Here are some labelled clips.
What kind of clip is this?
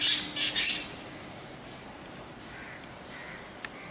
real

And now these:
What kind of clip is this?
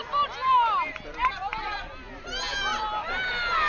real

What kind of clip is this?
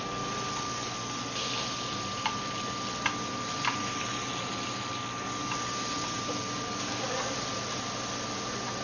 real